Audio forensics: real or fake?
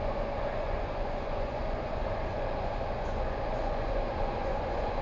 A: fake